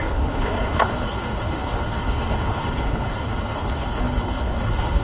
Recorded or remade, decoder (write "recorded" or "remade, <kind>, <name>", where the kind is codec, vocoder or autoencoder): remade, codec, HILCodec